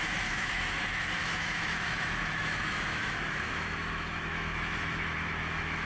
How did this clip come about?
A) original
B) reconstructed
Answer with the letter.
B